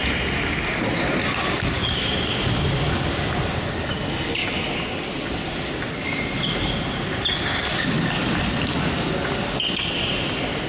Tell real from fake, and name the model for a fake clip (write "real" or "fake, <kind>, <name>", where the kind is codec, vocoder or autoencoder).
real